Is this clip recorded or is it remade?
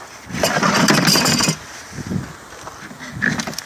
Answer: recorded